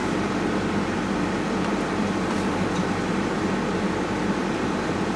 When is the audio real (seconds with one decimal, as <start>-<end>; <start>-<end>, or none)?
none